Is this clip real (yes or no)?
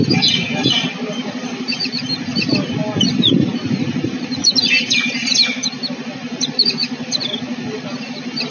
yes